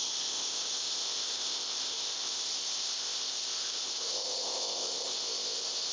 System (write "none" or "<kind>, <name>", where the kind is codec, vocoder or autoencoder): codec, ZipCodec